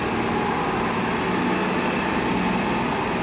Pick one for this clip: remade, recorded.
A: recorded